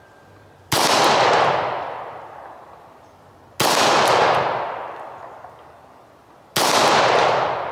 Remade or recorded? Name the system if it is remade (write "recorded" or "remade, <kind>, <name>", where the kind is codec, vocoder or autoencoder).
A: recorded